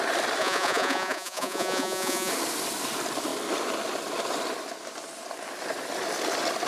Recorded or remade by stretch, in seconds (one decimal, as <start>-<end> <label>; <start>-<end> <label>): 0.0-0.4 recorded; 0.4-2.3 remade; 2.3-6.7 recorded